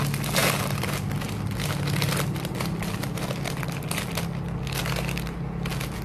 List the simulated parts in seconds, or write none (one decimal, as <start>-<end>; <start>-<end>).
none